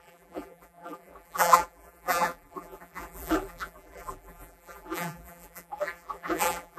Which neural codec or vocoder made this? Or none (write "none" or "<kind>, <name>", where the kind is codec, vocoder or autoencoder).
vocoder, BigVGAN v2